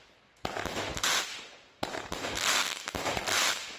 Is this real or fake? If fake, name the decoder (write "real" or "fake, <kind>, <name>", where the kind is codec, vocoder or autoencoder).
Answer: real